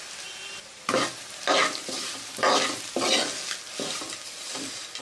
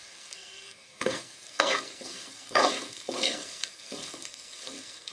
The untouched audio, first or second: first